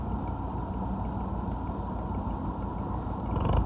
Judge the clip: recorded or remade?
recorded